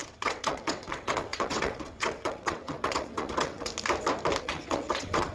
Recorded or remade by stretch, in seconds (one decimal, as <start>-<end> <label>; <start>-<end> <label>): 0.0-3.7 remade; 3.7-4.4 recorded; 4.4-5.3 remade